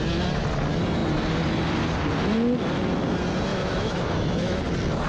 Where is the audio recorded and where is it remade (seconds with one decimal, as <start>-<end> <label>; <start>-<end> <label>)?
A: 0.0-3.5 recorded; 3.5-4.6 remade; 4.6-5.1 recorded